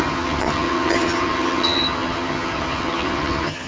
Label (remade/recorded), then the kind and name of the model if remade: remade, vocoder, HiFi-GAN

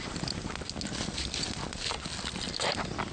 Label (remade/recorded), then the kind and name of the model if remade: recorded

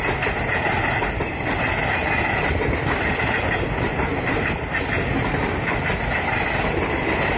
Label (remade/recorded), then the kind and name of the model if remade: recorded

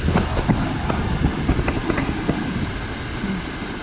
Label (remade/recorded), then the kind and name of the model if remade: recorded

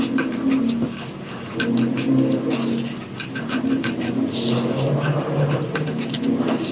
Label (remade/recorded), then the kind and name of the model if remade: recorded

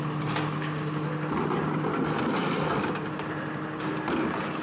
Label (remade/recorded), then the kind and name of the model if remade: recorded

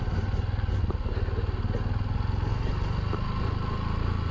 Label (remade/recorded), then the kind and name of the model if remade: recorded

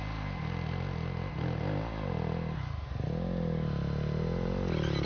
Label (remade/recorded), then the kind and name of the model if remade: recorded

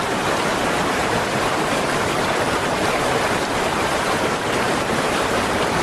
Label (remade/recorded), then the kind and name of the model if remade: remade, vocoder, BigVGAN v2